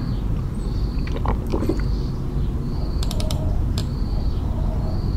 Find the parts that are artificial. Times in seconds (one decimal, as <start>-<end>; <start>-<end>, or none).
0.0-1.5; 2.9-5.2